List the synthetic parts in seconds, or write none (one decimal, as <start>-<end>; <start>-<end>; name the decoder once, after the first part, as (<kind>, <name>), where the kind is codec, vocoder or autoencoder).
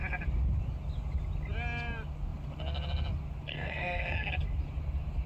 3.5-4.3 (codec, SNAC)